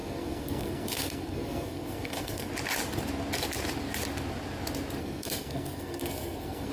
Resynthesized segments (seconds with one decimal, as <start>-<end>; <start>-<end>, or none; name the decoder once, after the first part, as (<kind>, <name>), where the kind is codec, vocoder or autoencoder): 0.0-2.5 (codec, SNAC); 5.0-6.7